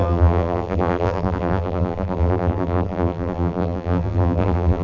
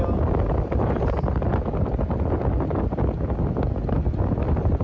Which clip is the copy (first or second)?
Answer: first